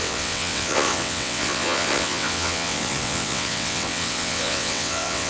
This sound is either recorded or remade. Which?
remade